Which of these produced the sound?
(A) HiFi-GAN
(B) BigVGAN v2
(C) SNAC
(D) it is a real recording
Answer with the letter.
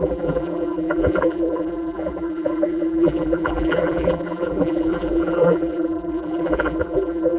B